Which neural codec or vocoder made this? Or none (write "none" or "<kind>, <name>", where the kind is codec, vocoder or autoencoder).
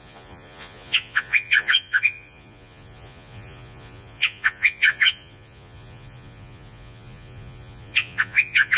vocoder, Vocos